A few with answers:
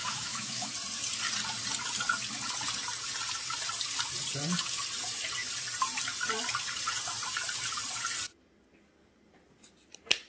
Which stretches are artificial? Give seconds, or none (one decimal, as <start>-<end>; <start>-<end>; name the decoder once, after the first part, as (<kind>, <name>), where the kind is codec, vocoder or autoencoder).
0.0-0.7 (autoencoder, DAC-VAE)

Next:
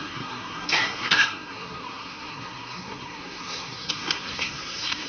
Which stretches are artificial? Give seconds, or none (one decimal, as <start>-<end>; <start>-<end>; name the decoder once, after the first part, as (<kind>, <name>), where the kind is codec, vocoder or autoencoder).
0.0-5.1 (codec, SNAC)

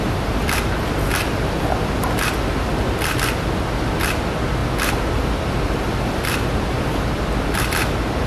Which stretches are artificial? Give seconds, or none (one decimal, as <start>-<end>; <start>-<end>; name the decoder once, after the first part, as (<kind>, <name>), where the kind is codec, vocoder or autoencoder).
none